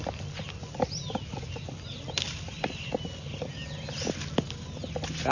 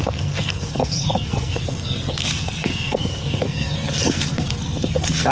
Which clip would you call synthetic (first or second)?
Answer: second